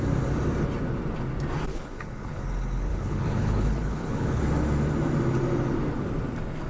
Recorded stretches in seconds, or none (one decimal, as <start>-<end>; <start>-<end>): 0.0-1.7; 2.4-2.9; 4.4-6.7